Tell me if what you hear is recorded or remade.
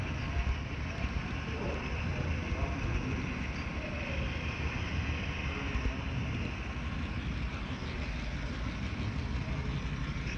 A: recorded